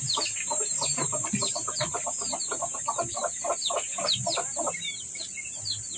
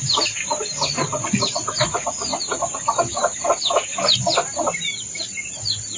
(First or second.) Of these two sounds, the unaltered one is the first